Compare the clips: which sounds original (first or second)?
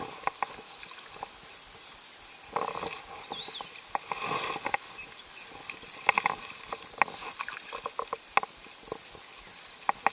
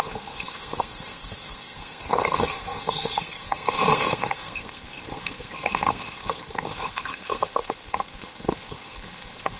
first